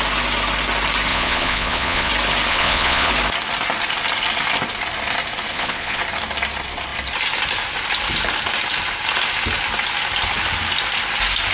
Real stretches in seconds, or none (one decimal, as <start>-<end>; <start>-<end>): 0.0-1.1; 2.1-2.5; 3.1-5.5; 6.0-11.5